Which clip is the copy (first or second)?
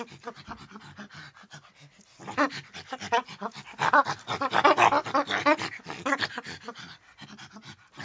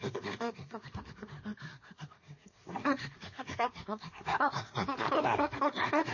second